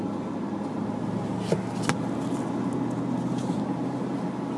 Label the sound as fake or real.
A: real